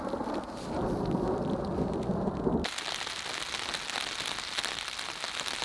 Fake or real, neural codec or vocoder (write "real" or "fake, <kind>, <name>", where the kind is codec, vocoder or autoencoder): real